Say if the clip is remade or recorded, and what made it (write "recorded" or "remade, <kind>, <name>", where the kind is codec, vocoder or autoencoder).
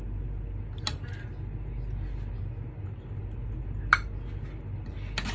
recorded